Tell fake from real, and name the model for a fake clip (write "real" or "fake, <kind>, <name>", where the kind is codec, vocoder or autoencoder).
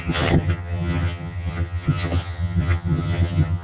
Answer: fake, vocoder, HiFi-GAN